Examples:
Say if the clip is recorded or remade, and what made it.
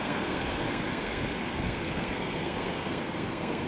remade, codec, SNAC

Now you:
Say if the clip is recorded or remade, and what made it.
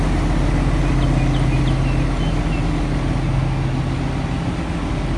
recorded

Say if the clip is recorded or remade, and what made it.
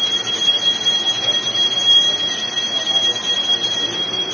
recorded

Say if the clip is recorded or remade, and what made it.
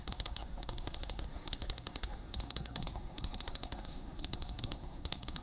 remade, codec, SNAC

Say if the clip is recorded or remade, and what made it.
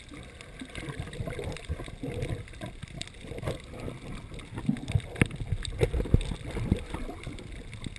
recorded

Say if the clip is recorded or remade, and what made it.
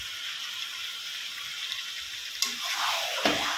recorded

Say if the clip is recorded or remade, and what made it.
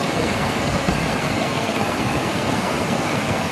remade, codec, SNAC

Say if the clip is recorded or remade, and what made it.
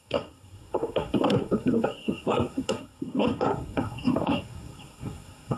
remade, codec, SNAC